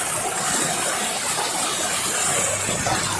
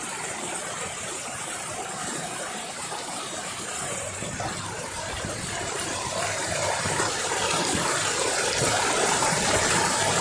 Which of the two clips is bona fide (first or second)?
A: first